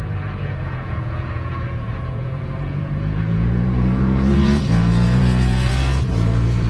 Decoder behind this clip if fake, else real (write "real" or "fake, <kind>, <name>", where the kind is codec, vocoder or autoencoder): fake, vocoder, Vocos